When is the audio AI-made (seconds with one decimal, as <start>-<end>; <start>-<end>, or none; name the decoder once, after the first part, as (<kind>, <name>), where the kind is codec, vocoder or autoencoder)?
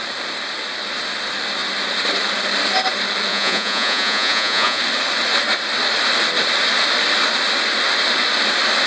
3.3-4.8 (vocoder, Vocos)